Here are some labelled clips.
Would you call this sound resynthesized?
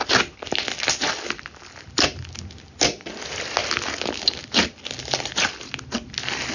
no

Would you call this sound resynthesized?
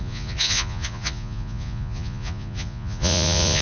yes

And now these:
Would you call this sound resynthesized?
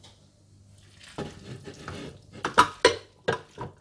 no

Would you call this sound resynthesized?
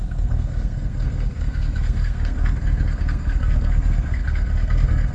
yes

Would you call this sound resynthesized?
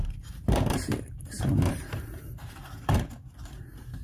yes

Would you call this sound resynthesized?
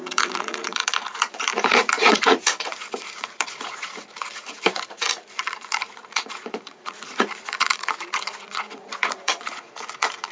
yes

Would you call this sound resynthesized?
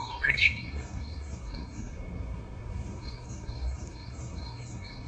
yes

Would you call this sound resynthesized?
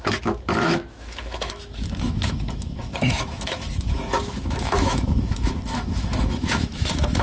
yes